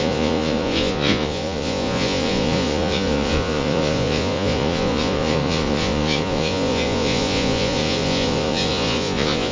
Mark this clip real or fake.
fake